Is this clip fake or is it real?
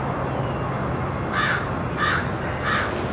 real